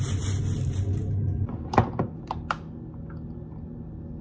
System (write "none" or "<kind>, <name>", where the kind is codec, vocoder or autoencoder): none